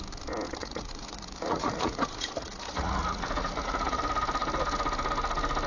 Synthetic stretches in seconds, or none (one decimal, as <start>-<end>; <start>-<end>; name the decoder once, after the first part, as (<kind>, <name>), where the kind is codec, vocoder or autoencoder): 0.6-4.0 (vocoder, Vocos)